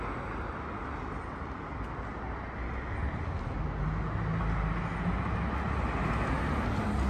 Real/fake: real